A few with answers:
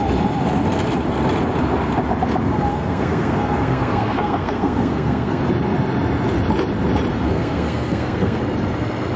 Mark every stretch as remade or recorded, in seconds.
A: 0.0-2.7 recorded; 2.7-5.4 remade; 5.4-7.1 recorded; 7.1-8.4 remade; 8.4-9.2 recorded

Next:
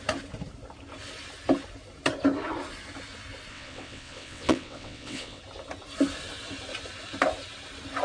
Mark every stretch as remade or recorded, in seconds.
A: 0.0-3.5 recorded; 3.5-5.4 remade; 5.4-8.0 recorded

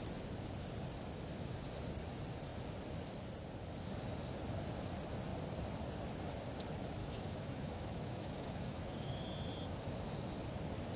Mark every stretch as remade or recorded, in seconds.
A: 0.0-7.0 recorded; 7.0-9.2 remade; 9.2-11.0 recorded

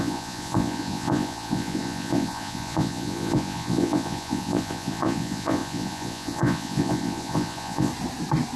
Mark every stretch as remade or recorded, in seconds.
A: 0.0-7.9 remade; 7.9-8.6 recorded

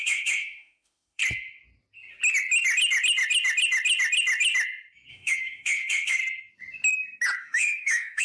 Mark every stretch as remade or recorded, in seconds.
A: 0.0-1.2 remade; 1.2-5.1 recorded; 5.1-6.2 remade; 6.2-7.4 recorded; 7.4-8.2 remade

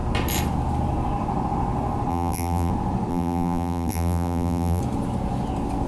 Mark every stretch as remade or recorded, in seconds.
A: 0.0-2.1 recorded; 2.1-2.7 remade; 2.7-3.1 recorded; 3.1-4.8 remade; 4.8-5.9 recorded

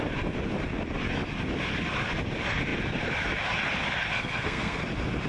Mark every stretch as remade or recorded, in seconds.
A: 0.0-4.1 recorded; 4.1-4.8 remade; 4.8-5.3 recorded

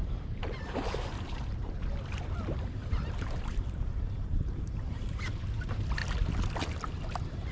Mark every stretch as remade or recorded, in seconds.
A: 0.0-6.0 remade; 6.0-6.9 recorded; 6.9-7.5 remade